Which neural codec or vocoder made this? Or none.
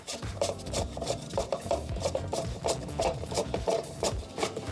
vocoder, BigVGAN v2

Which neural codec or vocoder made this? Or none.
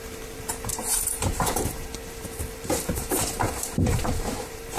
vocoder, BigVGAN v2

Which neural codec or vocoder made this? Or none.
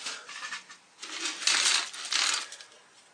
vocoder, BigVGAN v2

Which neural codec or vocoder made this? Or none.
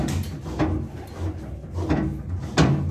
none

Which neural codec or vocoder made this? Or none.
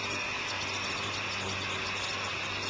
vocoder, BigVGAN v2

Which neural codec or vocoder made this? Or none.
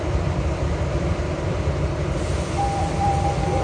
vocoder, BigVGAN v2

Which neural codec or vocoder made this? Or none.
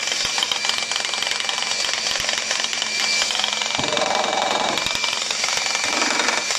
vocoder, BigVGAN v2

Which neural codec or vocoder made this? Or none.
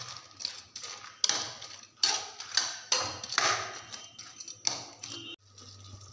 none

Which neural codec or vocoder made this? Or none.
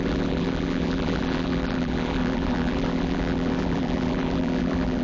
vocoder, BigVGAN v2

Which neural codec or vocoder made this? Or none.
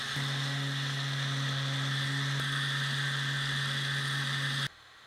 none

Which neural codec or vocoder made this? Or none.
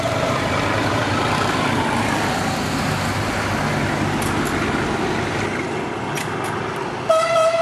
vocoder, BigVGAN v2